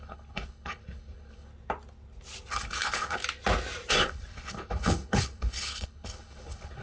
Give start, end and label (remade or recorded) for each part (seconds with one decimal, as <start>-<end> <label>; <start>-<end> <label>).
0.0-1.5 remade; 1.5-2.5 recorded; 2.5-3.2 remade; 3.2-3.9 recorded; 3.9-6.8 remade